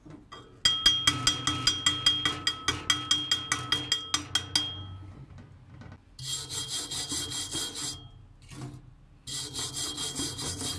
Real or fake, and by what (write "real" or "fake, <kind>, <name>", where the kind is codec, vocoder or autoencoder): real